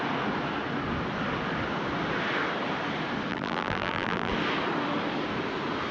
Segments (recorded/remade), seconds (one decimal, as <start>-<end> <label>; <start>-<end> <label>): 0.0-3.3 recorded; 3.3-4.3 remade; 4.3-5.9 recorded

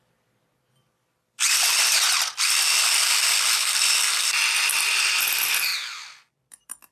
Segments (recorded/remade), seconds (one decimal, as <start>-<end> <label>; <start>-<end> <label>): 0.0-5.7 remade; 5.7-6.3 recorded; 6.3-6.9 remade

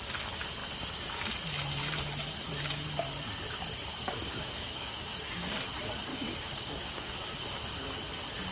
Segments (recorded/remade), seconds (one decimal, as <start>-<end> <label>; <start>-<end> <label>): 0.0-4.2 recorded; 4.2-5.6 remade; 5.6-6.1 recorded; 6.1-7.1 remade; 7.1-8.5 recorded

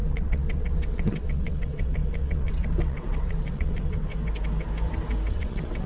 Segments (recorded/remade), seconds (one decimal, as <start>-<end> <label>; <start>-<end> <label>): 0.0-4.1 remade; 4.1-5.3 recorded; 5.3-5.9 remade